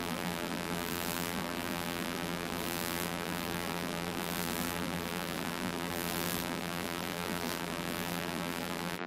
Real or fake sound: fake